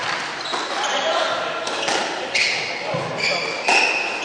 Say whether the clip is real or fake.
real